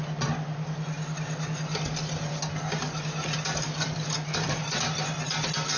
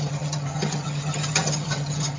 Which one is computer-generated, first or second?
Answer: second